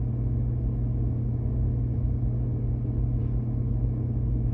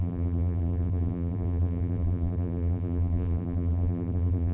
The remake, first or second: second